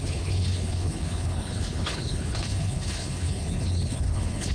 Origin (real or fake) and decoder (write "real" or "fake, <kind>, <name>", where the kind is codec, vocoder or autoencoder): fake, codec, HILCodec